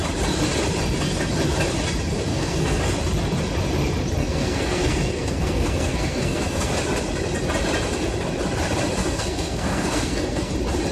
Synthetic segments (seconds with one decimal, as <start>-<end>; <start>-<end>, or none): 2.3-2.8; 4.2-6.7; 9.0-10.5